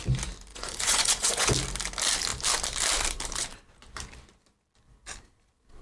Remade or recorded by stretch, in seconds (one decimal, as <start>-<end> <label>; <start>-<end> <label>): 0.0-0.5 recorded; 0.5-1.5 remade; 1.5-5.8 recorded